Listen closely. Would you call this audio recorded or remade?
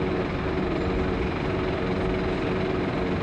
recorded